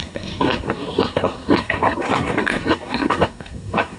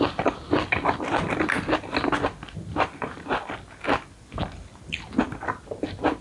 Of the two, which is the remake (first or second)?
first